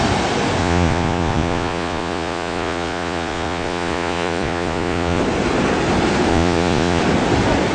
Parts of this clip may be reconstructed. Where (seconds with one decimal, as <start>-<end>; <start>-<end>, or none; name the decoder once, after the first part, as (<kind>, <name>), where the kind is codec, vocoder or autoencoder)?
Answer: 0.6-5.2 (vocoder, Vocos); 6.3-7.0